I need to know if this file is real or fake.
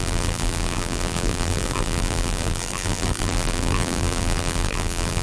fake